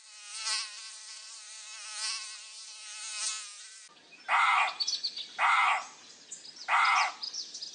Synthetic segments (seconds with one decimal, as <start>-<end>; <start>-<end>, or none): none